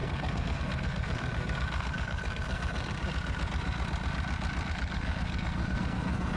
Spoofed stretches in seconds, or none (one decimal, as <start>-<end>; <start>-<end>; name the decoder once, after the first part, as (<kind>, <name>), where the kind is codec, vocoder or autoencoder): 0.0-3.0 (codec, SNAC); 4.7-6.4